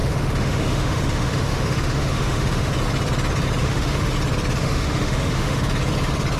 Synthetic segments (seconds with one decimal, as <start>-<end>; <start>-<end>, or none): 0.0-2.7; 3.6-4.1; 4.6-5.6